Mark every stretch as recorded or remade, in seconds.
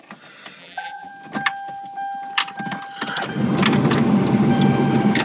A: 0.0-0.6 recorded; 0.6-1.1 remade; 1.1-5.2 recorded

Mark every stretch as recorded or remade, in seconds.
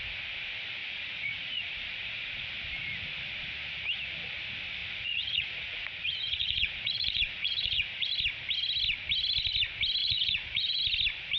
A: 0.0-0.8 recorded; 0.8-2.5 remade; 2.5-4.8 recorded; 4.8-8.1 remade; 8.1-10.0 recorded; 10.0-10.8 remade; 10.8-11.4 recorded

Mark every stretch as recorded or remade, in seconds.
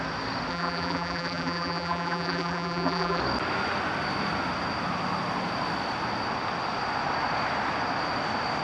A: 0.0-0.5 recorded; 0.5-3.2 remade; 3.2-8.6 recorded